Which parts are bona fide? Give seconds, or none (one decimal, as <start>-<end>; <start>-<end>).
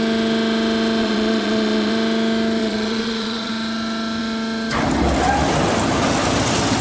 0.0-1.0; 1.9-2.6; 3.5-6.8